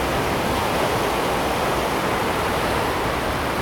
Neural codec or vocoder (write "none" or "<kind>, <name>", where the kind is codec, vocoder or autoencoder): none